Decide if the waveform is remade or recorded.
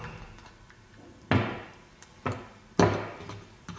recorded